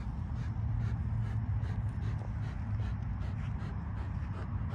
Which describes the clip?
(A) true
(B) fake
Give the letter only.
A